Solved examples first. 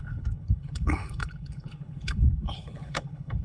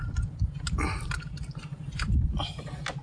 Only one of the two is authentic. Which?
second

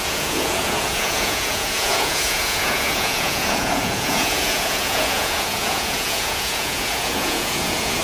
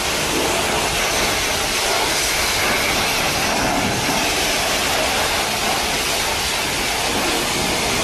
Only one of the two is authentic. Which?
second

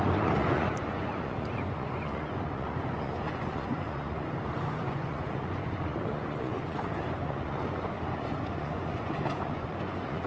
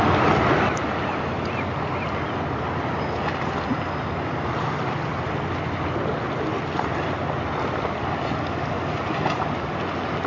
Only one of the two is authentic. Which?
second